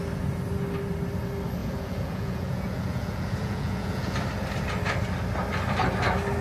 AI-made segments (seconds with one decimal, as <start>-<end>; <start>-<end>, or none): 1.6-4.1